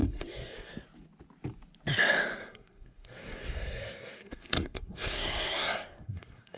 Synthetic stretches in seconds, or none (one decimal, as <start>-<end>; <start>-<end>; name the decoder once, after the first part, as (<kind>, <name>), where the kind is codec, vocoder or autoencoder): 0.0-0.7 (codec, SNAC); 2.4-6.6